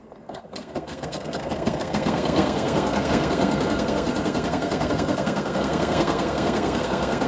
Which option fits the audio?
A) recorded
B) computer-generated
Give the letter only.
B